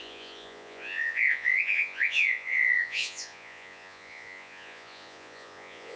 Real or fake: fake